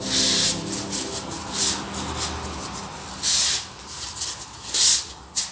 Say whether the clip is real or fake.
real